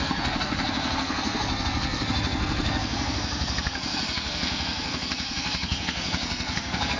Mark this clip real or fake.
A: fake